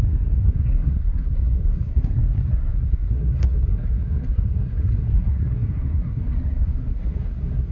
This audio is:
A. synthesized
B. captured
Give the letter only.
A